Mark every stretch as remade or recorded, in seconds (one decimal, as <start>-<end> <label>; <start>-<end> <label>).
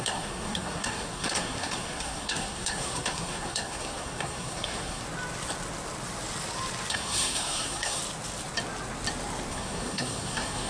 0.0-5.0 remade; 5.0-6.9 recorded; 6.9-8.0 remade; 8.0-9.5 recorded; 9.5-10.7 remade